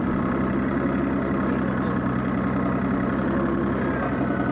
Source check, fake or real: real